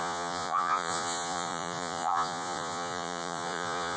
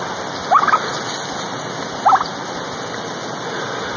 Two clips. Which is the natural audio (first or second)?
second